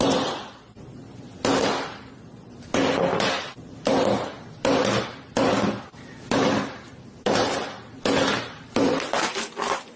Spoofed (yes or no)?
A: no